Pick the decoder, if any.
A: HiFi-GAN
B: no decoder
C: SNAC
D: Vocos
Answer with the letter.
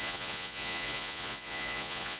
D